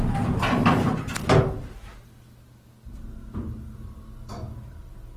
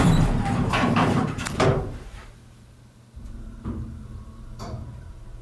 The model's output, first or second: second